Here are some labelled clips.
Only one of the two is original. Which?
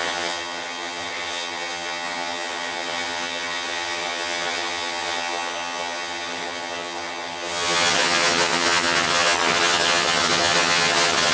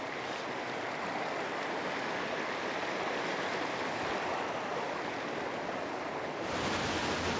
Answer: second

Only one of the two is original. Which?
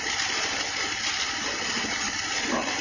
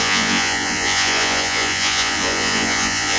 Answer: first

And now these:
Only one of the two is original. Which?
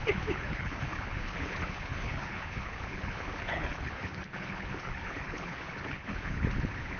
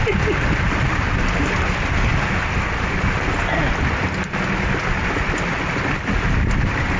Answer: second